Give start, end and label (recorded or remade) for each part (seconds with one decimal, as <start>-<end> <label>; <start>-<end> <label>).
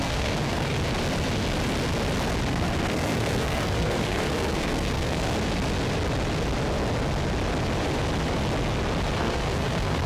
0.0-0.7 remade; 0.7-2.5 recorded; 2.5-5.2 remade; 5.2-9.2 recorded; 9.2-10.1 remade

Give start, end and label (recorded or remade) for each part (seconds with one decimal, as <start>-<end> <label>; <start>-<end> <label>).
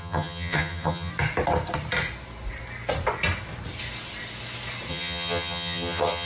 0.0-1.1 remade; 1.1-4.9 recorded; 4.9-6.3 remade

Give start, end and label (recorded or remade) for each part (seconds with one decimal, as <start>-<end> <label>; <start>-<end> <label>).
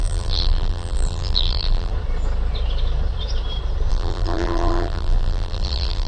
0.0-1.9 remade; 1.9-3.9 recorded; 3.9-6.1 remade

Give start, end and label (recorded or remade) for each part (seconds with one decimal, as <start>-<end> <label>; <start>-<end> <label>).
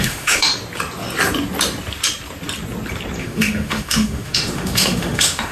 0.0-0.5 remade; 0.5-3.2 recorded; 3.2-5.5 remade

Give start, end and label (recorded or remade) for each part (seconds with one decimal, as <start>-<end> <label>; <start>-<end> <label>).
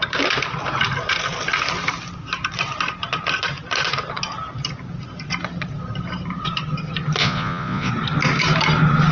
0.0-7.2 recorded; 7.2-7.9 remade; 7.9-9.1 recorded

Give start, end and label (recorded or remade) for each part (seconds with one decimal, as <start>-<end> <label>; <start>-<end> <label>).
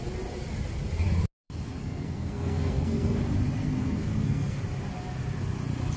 0.0-1.8 recorded; 1.8-3.2 remade; 3.2-3.6 recorded; 3.6-4.6 remade; 4.6-6.0 recorded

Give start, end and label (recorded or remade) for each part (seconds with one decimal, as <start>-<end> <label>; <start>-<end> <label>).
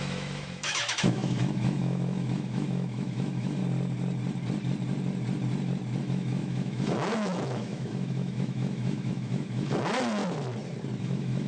0.0-3.6 remade; 3.6-6.0 recorded; 6.0-10.2 remade; 10.2-11.0 recorded; 11.0-11.5 remade